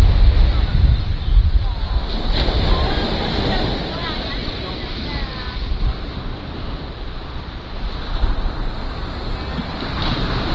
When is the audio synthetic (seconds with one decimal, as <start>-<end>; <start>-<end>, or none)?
none